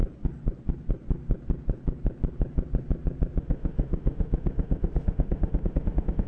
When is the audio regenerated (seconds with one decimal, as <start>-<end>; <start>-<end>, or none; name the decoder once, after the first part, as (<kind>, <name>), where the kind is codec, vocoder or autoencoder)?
3.4-6.3 (autoencoder, DAC-VAE)